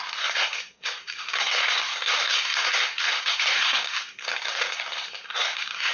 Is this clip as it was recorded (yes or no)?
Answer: no